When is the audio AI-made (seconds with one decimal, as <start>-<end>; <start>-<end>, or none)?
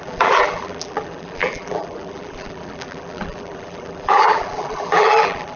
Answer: 0.0-5.6